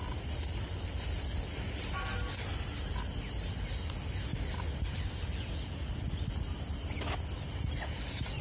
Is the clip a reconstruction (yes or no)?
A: no